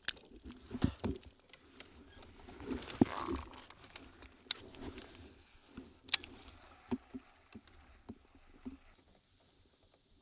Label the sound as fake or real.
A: real